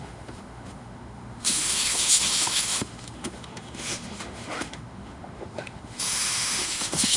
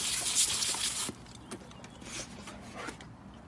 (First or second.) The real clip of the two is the second